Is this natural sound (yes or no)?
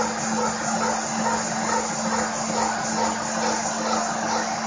yes